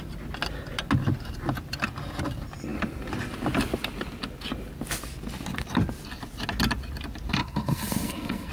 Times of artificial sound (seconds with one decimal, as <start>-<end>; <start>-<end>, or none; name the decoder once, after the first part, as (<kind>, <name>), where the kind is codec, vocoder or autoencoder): 7.4-8.5 (codec, SNAC)